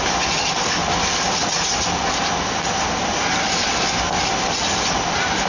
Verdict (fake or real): real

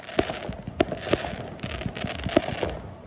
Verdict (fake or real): real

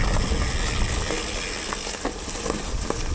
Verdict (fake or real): real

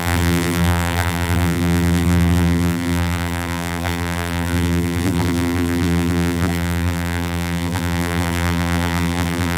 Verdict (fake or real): fake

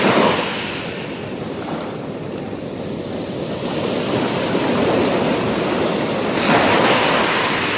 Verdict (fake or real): real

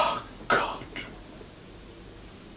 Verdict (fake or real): real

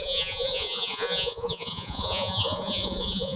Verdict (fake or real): fake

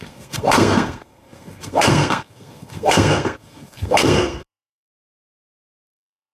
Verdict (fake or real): fake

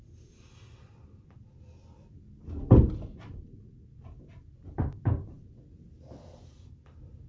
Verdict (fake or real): real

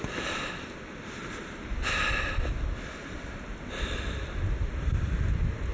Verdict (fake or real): real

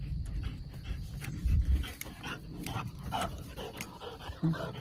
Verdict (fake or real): real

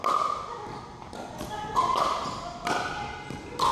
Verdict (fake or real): real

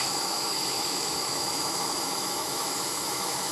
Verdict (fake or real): fake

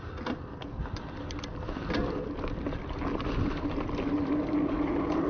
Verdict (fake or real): real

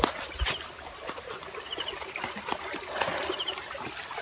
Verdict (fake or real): real